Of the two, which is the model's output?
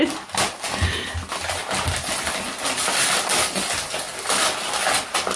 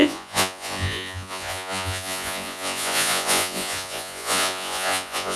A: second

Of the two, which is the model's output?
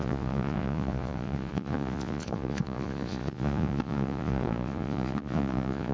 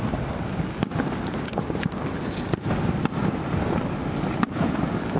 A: first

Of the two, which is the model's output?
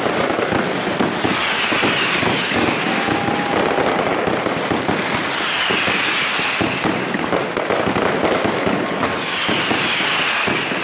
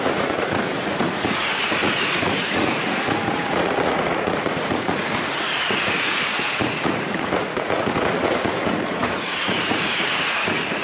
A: second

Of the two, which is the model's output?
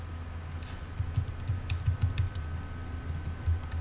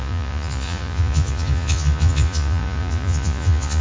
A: second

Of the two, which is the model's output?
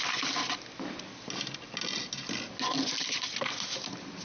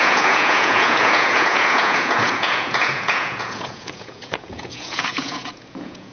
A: second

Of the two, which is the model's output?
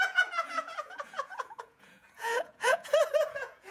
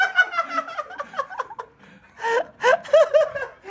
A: first